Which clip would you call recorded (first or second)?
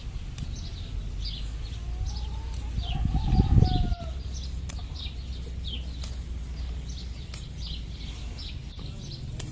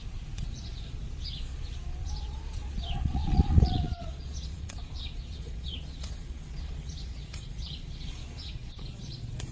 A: first